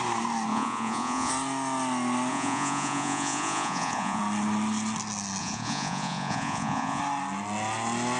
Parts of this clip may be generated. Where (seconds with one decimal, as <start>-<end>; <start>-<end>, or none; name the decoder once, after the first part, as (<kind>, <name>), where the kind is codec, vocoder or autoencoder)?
0.5-1.3 (vocoder, Vocos); 2.3-4.2; 5.4-7.0